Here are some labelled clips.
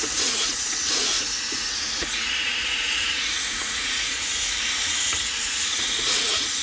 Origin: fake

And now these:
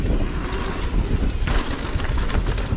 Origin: real